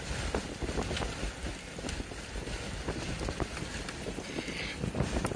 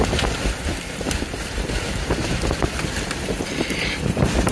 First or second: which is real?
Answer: first